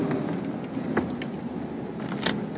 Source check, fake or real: real